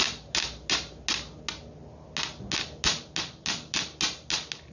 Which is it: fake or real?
real